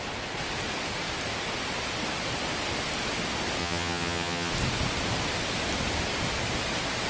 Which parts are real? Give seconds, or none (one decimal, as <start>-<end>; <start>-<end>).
0.0-3.6; 4.5-7.1